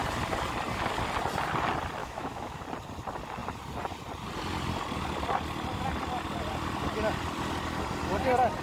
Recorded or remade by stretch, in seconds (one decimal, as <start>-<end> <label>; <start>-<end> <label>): 0.0-2.0 recorded; 2.0-2.6 remade; 2.6-8.6 recorded